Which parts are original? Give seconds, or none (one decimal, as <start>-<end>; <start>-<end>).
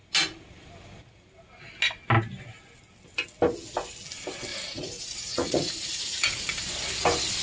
0.0-4.5; 6.6-7.4